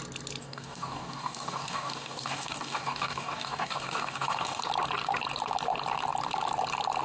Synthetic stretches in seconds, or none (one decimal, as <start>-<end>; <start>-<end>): 0.4-4.6